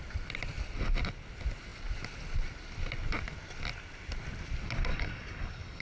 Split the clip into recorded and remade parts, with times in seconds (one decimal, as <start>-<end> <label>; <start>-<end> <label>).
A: 0.0-4.9 recorded; 4.9-5.8 remade